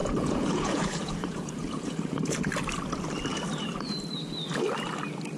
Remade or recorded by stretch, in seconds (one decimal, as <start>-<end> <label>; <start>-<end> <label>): 0.0-2.3 remade; 2.3-5.4 recorded